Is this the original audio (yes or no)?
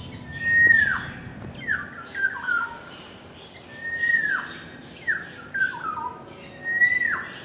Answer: yes